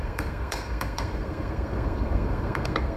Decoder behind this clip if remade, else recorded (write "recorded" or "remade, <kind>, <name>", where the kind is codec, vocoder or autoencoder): remade, codec, SNAC